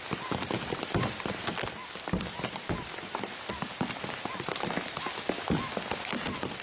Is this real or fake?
real